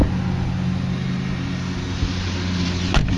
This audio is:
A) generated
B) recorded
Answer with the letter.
B